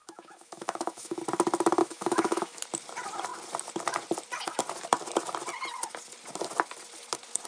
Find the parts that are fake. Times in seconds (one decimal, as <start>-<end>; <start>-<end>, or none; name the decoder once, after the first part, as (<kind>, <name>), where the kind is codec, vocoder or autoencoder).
0.0-1.2 (autoencoder, DAC-VAE); 1.8-2.6